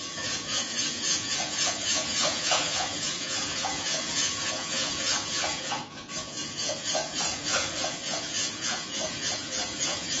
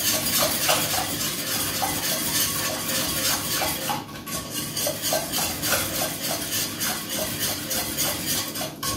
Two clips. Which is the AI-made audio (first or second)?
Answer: first